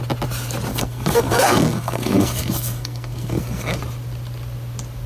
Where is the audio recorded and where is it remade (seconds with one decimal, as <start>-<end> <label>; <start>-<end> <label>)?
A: 0.0-0.7 recorded; 0.7-3.8 remade; 3.8-5.1 recorded